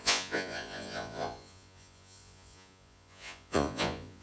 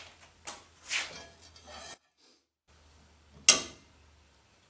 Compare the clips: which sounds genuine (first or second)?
second